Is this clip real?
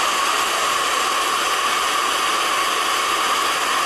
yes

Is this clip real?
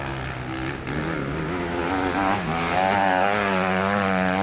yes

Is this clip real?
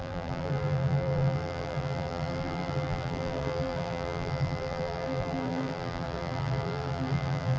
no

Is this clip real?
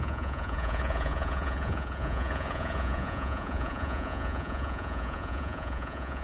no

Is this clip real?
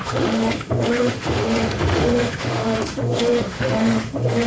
no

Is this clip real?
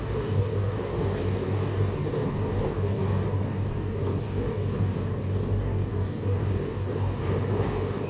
no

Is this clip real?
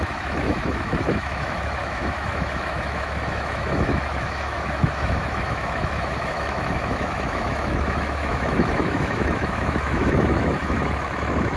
no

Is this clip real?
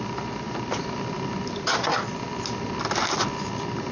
yes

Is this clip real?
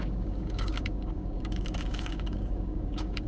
no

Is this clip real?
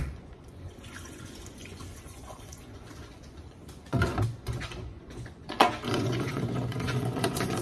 no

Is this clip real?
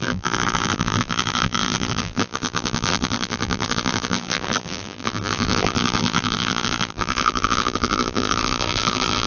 no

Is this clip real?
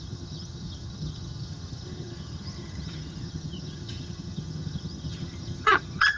no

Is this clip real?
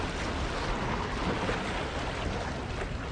yes